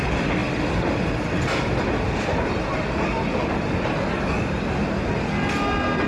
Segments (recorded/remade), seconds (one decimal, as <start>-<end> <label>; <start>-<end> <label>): 0.0-6.1 recorded